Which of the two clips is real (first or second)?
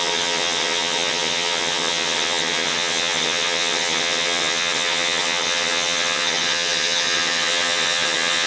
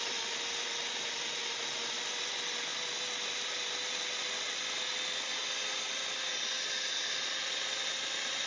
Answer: second